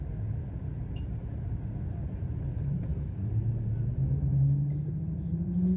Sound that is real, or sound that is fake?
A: real